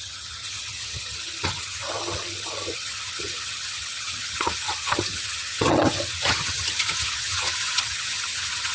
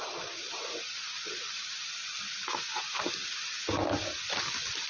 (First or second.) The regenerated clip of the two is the first